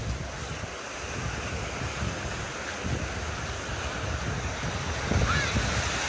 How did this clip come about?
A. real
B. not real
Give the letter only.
A